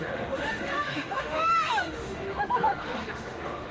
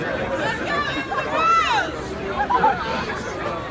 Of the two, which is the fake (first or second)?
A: first